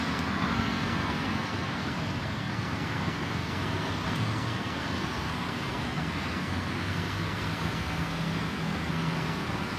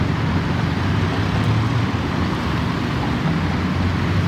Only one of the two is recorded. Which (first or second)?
second